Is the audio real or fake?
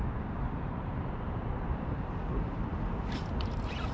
fake